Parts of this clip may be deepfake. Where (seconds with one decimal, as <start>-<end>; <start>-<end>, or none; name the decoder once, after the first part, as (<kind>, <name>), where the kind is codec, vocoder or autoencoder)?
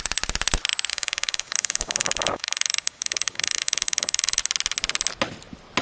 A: 0.9-4.4 (codec, DAC)